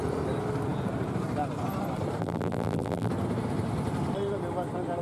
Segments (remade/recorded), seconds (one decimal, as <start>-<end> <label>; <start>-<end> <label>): 0.0-2.2 recorded; 2.2-3.1 remade; 3.1-5.0 recorded